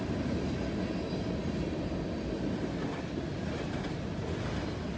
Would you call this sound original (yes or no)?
yes